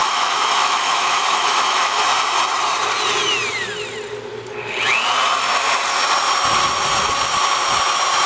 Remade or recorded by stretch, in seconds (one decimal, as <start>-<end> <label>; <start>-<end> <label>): 0.0-2.0 remade; 2.0-8.3 recorded

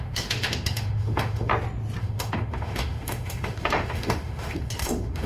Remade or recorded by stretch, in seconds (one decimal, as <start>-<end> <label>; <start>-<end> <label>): 0.0-1.5 remade; 1.5-2.0 recorded; 2.0-5.3 remade

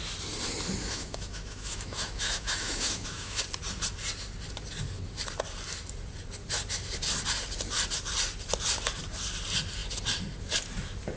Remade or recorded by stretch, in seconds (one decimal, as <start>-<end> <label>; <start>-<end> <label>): 0.0-0.8 recorded; 0.8-3.4 remade; 3.4-11.2 recorded